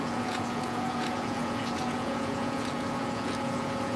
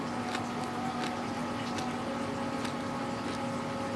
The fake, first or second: first